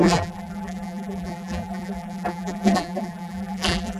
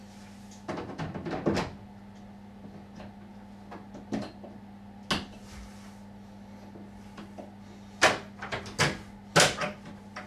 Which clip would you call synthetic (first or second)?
first